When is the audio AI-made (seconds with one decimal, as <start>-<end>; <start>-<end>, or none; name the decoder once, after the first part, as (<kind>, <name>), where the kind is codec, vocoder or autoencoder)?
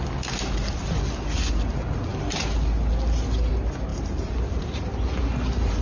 3.9-4.9 (vocoder, BigVGAN v2)